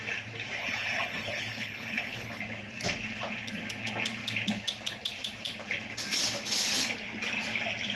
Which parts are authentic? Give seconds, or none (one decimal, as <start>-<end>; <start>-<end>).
0.0-0.6; 2.4-8.0